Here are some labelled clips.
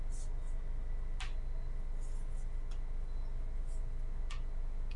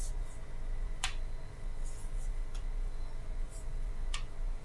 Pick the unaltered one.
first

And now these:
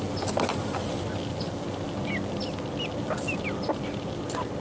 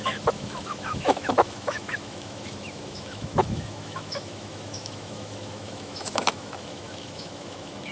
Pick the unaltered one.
first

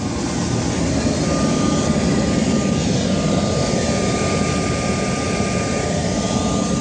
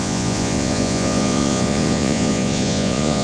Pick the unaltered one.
first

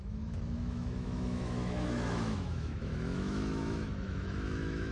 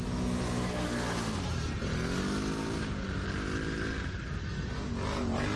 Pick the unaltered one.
second